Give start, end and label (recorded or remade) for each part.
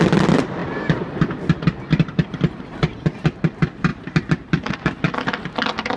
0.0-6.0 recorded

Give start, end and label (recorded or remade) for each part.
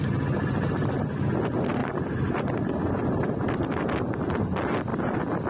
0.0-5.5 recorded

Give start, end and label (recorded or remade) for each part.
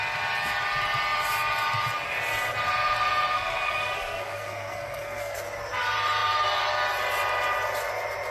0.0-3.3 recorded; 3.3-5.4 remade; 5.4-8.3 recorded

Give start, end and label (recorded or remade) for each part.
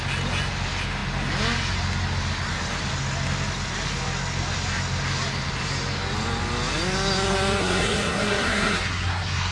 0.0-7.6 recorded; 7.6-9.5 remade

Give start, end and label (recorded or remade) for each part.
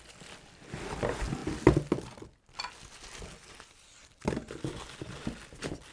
0.0-5.9 recorded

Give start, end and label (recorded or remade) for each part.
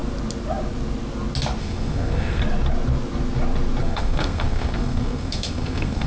0.0-1.6 recorded; 1.6-2.4 remade; 2.4-3.8 recorded; 3.8-6.1 remade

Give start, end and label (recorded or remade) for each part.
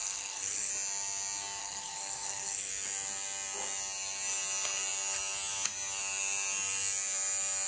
0.0-0.7 remade; 0.7-1.6 recorded; 1.6-2.7 remade; 2.7-7.7 recorded